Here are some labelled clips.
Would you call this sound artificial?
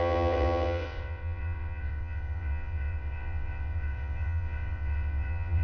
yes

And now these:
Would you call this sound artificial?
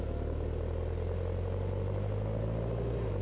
no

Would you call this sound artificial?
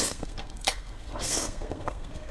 yes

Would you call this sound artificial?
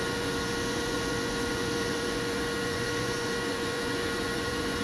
yes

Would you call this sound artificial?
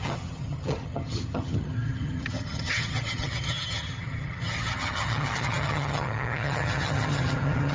yes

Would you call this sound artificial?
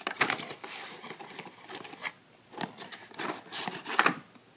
no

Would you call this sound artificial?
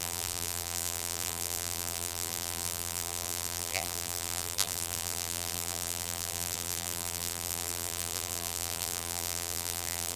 yes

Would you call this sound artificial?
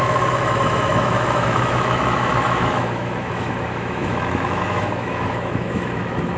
yes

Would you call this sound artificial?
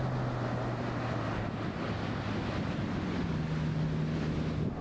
no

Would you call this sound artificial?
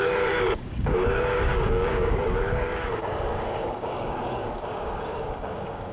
yes